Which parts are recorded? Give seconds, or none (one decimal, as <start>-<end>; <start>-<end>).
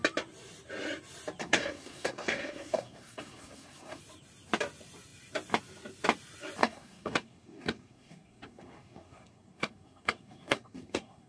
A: 0.0-1.4; 4.0-6.6